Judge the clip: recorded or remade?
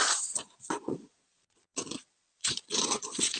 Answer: remade